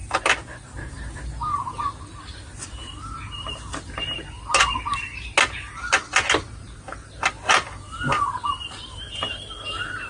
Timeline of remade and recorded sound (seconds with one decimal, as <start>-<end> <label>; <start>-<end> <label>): 0.0-10.1 recorded

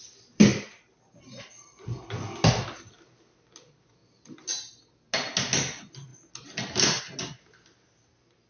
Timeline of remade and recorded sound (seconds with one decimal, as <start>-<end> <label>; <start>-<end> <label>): 0.0-8.5 recorded

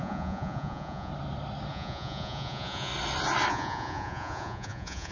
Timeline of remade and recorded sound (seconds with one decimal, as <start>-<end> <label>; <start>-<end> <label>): 0.0-1.1 remade; 1.1-1.7 recorded; 1.7-2.9 remade; 2.9-3.5 recorded; 3.5-5.1 remade